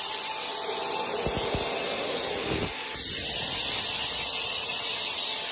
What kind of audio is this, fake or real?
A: real